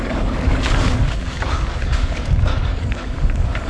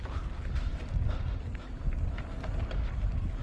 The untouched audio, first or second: second